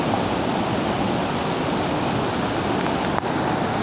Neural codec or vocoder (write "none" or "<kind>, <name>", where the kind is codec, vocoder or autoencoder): none